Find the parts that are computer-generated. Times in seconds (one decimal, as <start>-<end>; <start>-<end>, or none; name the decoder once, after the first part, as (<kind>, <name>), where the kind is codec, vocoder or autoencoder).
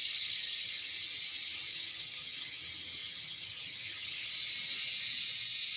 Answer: 0.0-0.9 (vocoder, HiFi-GAN); 1.7-2.6; 3.0-4.3